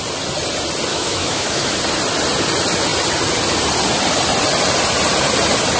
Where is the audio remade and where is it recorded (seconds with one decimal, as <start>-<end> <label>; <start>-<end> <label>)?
0.0-0.9 recorded; 0.9-1.7 remade; 1.7-5.8 recorded